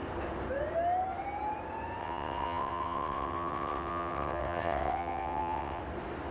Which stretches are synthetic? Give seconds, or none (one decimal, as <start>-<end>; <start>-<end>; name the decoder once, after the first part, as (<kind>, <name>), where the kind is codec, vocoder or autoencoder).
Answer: 2.0-5.8 (vocoder, WaveNeXt)